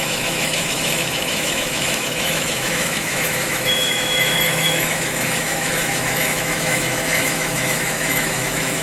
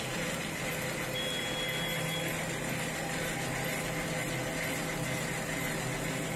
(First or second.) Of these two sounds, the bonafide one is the second